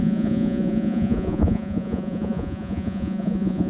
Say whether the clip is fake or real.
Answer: fake